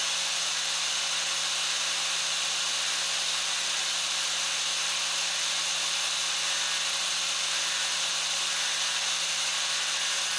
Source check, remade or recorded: recorded